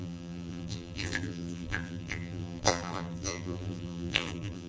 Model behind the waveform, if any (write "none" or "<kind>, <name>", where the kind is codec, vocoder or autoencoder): vocoder, BigVGAN v2